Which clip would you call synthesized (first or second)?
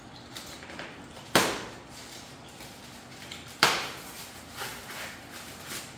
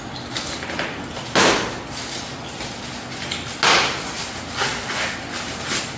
first